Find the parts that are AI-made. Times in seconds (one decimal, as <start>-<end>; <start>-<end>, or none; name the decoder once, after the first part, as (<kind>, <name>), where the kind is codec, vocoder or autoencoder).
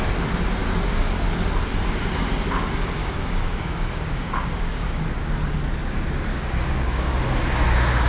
0.6-1.2 (codec, DAC); 3.0-5.0; 6.3-7.2